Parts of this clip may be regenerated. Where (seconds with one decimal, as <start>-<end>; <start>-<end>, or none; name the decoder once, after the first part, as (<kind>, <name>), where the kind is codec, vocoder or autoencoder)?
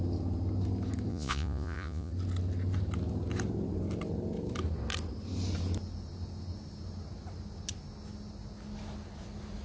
1.1-2.1 (vocoder, Vocos)